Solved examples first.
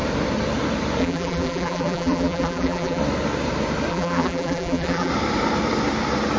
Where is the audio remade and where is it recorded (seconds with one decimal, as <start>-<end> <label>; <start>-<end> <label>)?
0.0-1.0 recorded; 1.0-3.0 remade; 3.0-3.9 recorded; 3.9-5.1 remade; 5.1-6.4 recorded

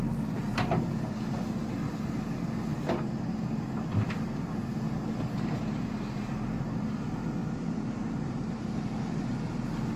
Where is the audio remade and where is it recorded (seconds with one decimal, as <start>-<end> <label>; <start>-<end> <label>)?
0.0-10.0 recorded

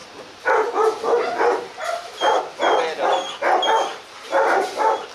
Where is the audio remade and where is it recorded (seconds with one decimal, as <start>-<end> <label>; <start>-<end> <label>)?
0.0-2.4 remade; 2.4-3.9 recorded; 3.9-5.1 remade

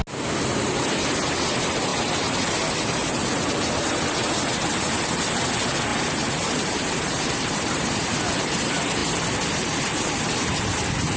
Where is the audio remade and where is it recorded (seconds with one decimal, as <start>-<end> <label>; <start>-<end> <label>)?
0.0-5.9 recorded; 5.9-8.2 remade; 8.2-11.2 recorded

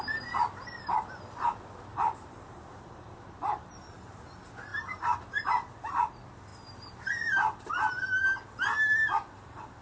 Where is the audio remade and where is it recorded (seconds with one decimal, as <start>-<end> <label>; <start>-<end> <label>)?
0.0-1.9 recorded; 1.9-4.2 remade; 4.2-4.7 recorded; 4.7-5.8 remade; 5.8-9.8 recorded

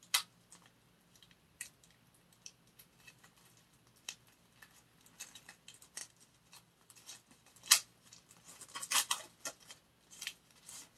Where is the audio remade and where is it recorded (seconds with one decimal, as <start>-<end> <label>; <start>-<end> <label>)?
0.0-11.0 recorded

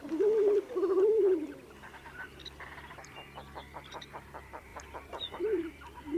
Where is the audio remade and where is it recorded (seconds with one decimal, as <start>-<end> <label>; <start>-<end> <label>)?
0.0-6.2 remade